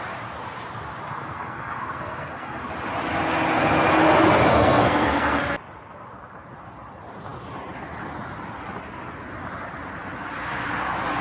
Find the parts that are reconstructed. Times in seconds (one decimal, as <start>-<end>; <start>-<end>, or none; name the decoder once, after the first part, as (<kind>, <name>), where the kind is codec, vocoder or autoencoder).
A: 1.1-2.7 (codec, SNAC); 4.5-5.4